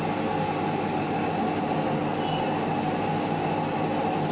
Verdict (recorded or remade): recorded